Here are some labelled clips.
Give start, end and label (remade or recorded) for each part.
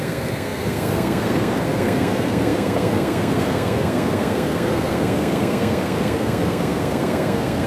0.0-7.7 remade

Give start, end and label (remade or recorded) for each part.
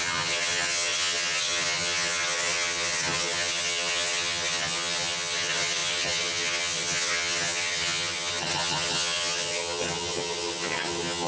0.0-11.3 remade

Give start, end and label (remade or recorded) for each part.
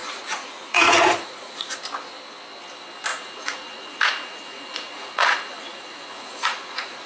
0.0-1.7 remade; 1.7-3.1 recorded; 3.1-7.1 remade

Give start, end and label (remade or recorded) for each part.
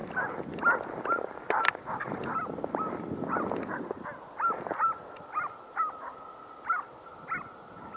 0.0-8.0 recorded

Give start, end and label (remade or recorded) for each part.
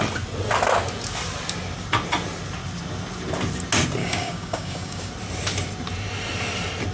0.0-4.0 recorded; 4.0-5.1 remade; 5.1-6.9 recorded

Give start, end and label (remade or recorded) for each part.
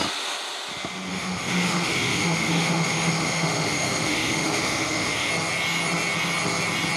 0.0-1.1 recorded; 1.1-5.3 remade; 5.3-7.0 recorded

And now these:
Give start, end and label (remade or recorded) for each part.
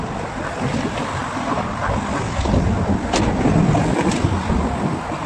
0.0-1.2 recorded; 1.2-1.8 remade; 1.8-5.3 recorded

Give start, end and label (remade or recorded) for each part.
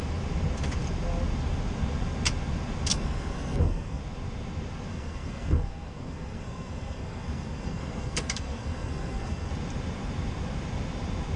0.0-2.9 recorded; 2.9-4.0 remade; 4.0-4.9 recorded; 4.9-9.5 remade; 9.5-11.4 recorded